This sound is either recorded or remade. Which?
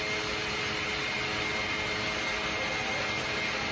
recorded